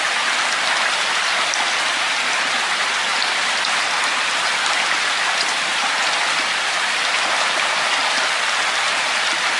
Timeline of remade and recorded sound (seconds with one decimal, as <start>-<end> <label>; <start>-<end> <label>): 0.0-9.6 recorded